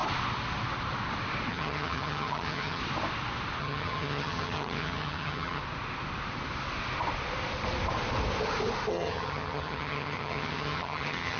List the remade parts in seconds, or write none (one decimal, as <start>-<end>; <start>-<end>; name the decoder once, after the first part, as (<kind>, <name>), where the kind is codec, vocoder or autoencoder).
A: 1.5-2.8 (vocoder, HiFi-GAN); 3.6-5.6; 8.9-11.4